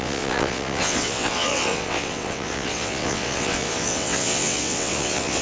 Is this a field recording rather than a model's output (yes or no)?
no